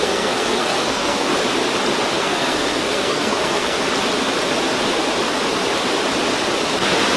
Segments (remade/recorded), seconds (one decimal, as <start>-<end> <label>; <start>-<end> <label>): 0.0-1.3 remade; 1.3-2.2 recorded; 2.2-3.8 remade; 3.8-7.2 recorded